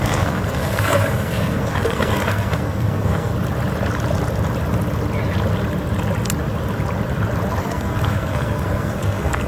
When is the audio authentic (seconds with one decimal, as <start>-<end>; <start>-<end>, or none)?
3.3-7.6